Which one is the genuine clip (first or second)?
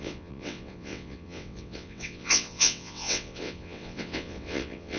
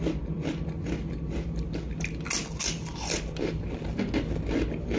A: second